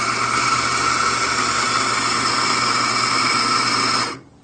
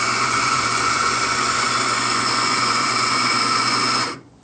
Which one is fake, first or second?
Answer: second